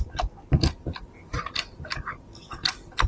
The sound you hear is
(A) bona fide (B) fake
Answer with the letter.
A